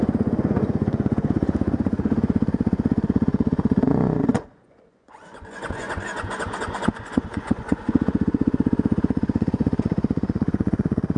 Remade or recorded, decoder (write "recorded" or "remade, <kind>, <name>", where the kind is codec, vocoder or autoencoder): remade, vocoder, Vocos